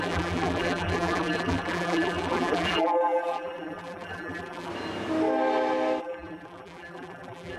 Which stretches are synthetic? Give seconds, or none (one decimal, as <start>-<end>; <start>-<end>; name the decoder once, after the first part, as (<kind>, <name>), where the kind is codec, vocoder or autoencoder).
0.0-4.7 (vocoder, BigVGAN v2); 6.0-7.6